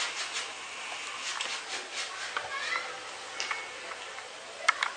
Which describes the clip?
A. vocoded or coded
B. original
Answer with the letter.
B